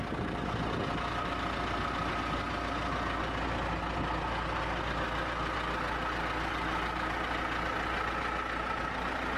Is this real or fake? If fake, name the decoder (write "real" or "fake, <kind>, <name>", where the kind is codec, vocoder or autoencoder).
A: real